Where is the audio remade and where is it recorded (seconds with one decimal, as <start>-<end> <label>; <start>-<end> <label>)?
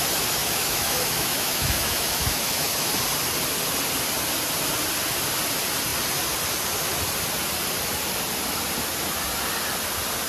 0.0-0.4 recorded; 0.4-2.9 remade; 2.9-10.3 recorded